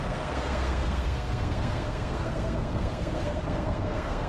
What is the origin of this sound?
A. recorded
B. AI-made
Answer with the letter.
B